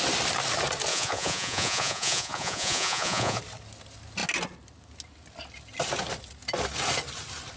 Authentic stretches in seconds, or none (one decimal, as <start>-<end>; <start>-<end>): 0.0-0.9; 3.4-7.6